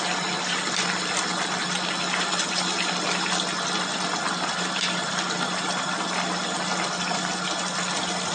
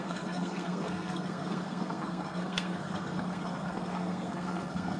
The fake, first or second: second